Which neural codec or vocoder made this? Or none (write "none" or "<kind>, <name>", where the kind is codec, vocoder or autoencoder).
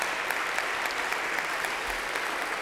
none